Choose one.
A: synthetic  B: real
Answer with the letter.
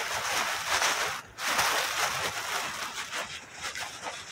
B